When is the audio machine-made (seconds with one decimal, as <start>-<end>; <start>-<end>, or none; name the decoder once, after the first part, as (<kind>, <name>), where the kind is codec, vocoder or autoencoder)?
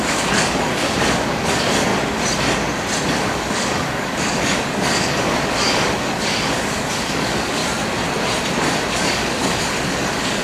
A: 0.0-1.9 (codec, DAC); 3.1-7.6; 8.9-10.4